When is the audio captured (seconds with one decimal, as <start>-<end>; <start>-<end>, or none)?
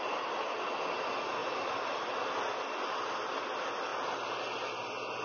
0.0-5.2